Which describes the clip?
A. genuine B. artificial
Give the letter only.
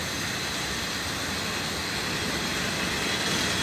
A